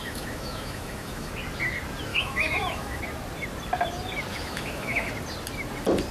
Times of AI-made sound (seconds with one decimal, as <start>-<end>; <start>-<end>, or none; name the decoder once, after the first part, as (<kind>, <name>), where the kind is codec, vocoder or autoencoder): 0.0-1.3 (autoencoder, DAC-VAE); 2.1-3.0; 4.3-5.1